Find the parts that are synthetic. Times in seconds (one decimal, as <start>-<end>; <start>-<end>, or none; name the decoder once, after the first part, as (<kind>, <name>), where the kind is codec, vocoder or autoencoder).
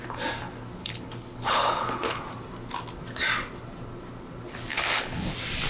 0.8-2.2 (codec, HILCodec); 4.7-5.3